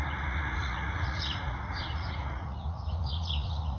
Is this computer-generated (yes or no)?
yes